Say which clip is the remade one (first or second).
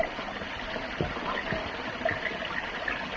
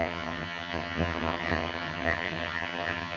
second